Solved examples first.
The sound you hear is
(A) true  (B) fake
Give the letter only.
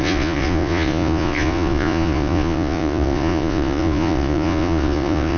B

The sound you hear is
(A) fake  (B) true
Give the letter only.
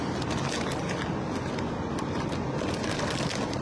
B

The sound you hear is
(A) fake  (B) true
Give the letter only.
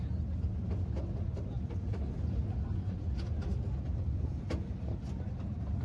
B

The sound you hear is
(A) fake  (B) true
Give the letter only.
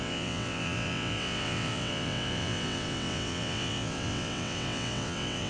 A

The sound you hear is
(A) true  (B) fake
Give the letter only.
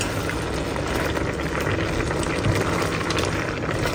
A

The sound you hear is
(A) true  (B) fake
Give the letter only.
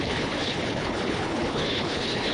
B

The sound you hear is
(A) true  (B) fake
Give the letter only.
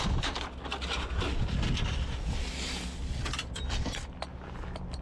A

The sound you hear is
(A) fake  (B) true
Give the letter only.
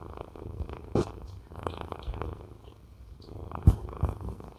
A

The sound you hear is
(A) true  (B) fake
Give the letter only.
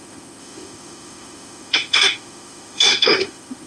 B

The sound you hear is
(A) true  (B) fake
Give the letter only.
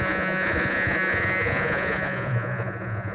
B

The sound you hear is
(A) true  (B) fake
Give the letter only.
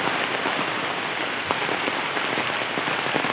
B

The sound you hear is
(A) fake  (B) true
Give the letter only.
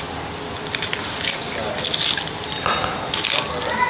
B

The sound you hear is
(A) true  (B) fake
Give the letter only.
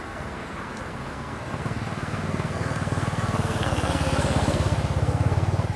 B